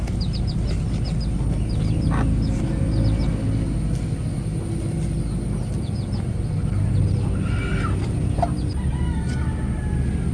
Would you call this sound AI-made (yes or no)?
no